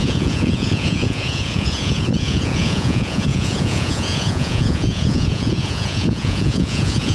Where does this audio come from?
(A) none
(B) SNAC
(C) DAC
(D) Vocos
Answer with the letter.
D